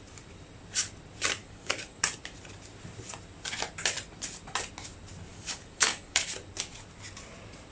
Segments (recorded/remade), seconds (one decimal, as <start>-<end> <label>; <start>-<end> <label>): 0.0-1.4 recorded; 1.4-2.0 remade; 2.0-5.3 recorded; 5.3-6.3 remade; 6.3-7.7 recorded